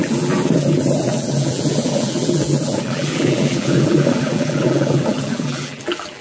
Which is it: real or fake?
fake